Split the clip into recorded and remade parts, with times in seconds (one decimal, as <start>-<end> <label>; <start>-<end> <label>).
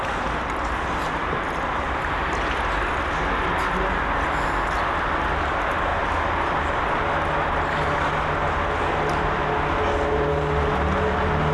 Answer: 0.0-11.5 recorded